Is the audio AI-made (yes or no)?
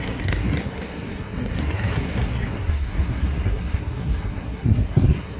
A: yes